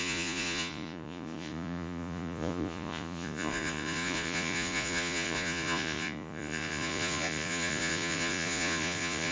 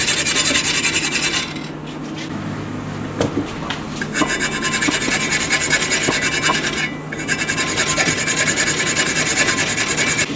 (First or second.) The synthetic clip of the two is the first